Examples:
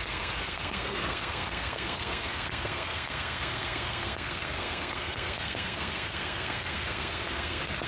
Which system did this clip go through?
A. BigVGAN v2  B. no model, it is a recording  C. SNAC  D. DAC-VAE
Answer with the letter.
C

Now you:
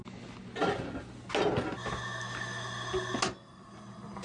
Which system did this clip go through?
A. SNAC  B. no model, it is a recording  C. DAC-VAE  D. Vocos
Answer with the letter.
B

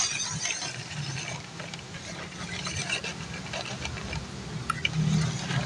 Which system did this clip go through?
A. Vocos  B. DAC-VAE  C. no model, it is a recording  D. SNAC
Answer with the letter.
C